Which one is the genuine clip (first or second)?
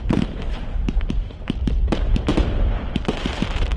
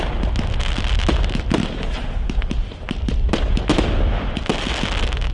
second